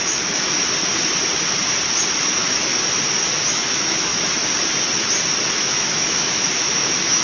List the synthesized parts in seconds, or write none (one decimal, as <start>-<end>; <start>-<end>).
0.0-0.6; 2.3-2.7; 3.5-4.1; 5.5-7.2